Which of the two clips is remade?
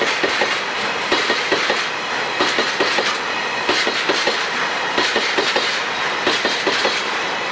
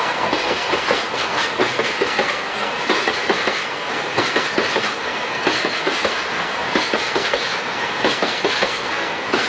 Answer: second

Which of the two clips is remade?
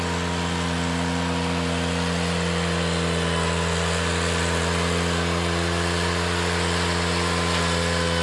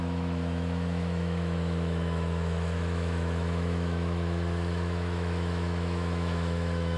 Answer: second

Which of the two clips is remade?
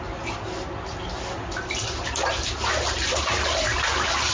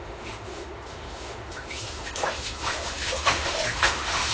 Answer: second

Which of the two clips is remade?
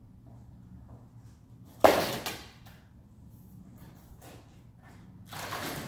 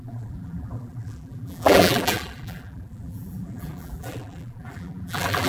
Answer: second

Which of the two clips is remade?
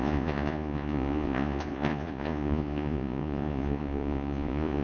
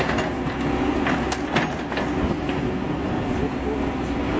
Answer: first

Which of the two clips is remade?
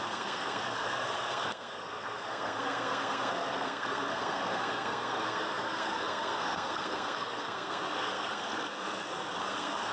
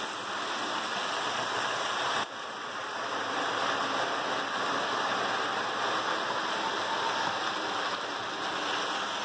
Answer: first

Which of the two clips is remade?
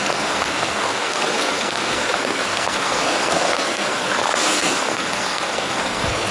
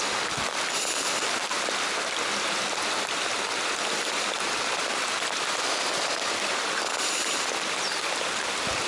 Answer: first